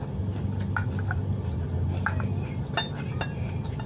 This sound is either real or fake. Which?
real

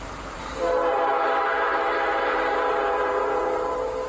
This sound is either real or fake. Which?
fake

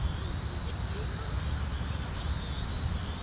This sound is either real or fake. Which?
real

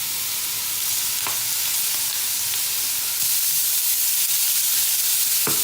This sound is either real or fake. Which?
real